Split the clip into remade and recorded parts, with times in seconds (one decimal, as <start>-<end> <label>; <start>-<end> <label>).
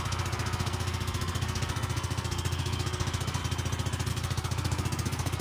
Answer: 0.0-3.4 remade; 3.4-4.1 recorded; 4.1-5.4 remade